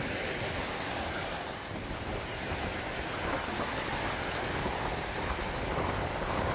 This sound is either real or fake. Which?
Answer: real